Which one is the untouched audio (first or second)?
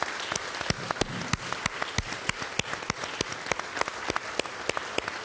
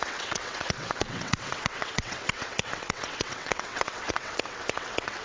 first